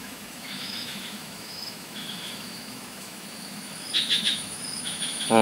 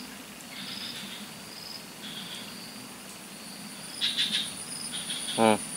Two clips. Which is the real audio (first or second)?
second